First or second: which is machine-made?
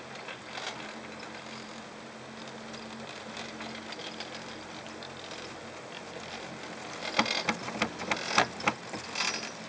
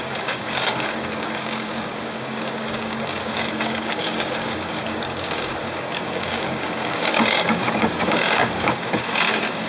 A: second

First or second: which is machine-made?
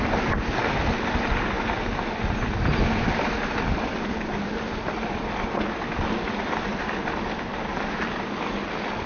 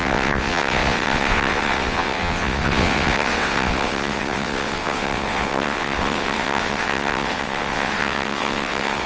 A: second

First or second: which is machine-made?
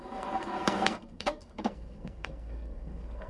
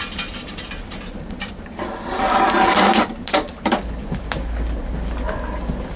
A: first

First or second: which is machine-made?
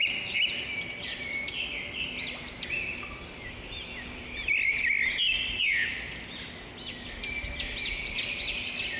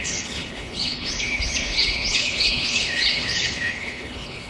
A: second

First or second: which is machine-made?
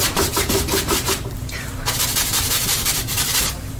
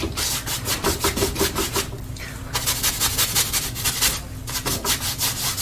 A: first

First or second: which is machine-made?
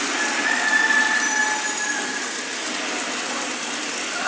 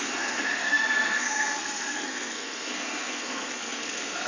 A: second